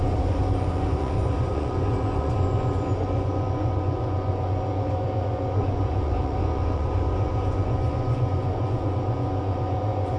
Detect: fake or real fake